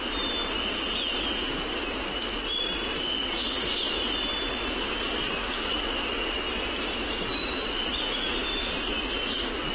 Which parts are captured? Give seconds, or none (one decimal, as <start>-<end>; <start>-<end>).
0.0-2.7; 3.8-7.3; 8.9-9.7

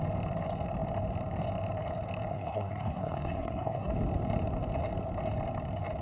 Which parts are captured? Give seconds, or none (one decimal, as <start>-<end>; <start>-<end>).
0.0-2.3; 3.9-6.0

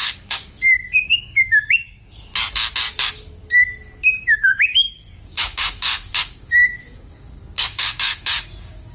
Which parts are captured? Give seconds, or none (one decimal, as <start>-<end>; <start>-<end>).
2.3-4.2

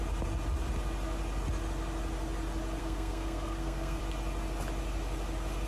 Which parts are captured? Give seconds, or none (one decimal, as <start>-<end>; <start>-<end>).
0.0-2.8; 4.0-5.7

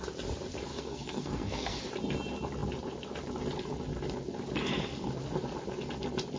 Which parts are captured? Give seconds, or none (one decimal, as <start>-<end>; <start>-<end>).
0.0-0.7; 1.8-6.4

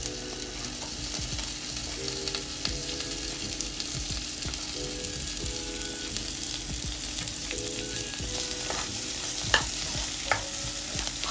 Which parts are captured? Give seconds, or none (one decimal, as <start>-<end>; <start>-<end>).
0.0-2.8; 4.7-7.4; 9.7-11.3